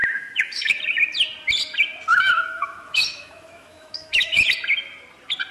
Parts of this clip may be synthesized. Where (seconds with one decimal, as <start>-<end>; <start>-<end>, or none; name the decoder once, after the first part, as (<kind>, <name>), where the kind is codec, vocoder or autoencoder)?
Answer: 0.0-0.8 (autoencoder, DAC-VAE); 2.1-4.4